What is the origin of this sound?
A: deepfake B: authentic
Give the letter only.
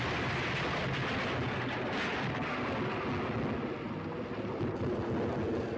B